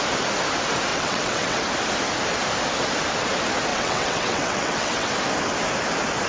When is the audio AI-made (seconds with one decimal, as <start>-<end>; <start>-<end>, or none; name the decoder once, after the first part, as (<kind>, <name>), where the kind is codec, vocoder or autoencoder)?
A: 0.9-1.6 (vocoder, WaveNeXt); 3.7-5.1